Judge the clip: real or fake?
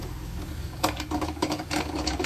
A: fake